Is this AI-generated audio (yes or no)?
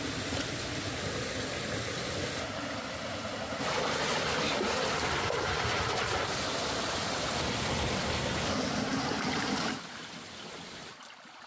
no